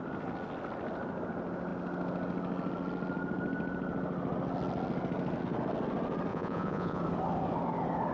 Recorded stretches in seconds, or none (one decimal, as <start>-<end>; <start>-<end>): 0.0-6.3; 7.0-8.1